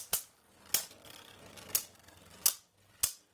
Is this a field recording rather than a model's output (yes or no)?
yes